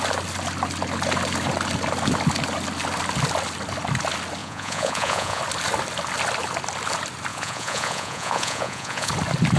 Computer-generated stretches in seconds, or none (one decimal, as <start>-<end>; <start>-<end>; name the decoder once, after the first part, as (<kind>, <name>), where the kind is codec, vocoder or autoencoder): 4.4-5.4 (vocoder, Vocos); 7.3-9.1